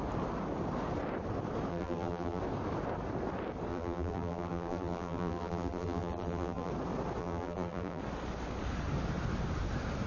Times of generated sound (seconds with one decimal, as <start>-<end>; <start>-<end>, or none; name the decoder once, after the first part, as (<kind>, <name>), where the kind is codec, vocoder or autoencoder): 1.7-2.4 (vocoder, BigVGAN v2); 3.7-6.7; 7.2-8.0